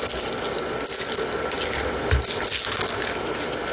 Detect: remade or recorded recorded